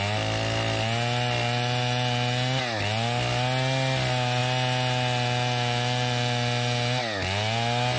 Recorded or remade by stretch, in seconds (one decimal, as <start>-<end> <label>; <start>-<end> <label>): 0.0-8.0 recorded